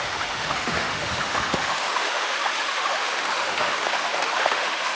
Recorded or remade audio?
remade